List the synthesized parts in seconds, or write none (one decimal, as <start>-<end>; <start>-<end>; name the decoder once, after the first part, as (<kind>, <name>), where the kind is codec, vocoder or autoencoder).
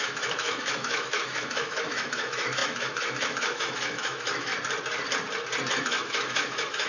0.0-4.5 (autoencoder, DAC-VAE); 5.7-6.9